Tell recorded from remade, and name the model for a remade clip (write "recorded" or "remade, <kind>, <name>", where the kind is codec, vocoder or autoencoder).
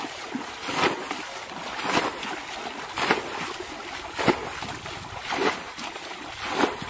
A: remade, vocoder, BigVGAN v2